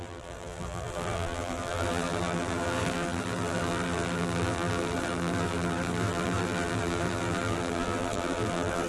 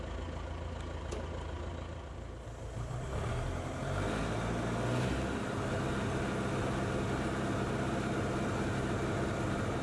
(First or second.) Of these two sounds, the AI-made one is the first